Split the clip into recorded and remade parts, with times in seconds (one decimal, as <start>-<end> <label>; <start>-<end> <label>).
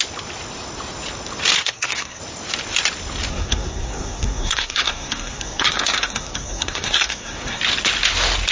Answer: 0.0-1.6 recorded; 1.6-2.2 remade; 2.2-3.3 recorded; 3.3-7.6 remade; 7.6-8.5 recorded